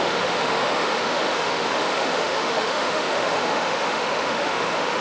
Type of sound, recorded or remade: remade